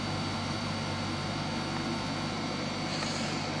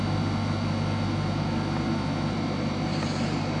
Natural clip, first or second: second